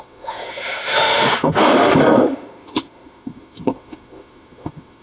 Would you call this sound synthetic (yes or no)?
yes